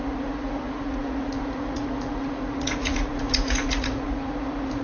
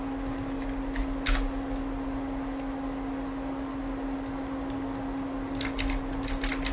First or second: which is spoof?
first